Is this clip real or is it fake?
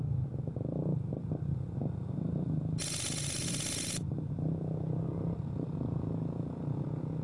real